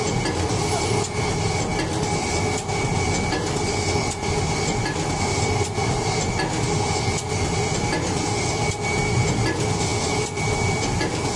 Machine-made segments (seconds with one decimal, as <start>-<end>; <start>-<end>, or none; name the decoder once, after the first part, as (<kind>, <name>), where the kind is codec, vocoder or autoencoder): none